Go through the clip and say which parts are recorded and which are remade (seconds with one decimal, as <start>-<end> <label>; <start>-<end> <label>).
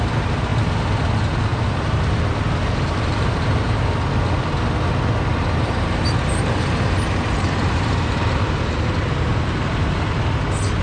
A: 0.0-1.5 recorded; 1.5-3.8 remade; 3.8-5.3 recorded; 5.3-10.8 remade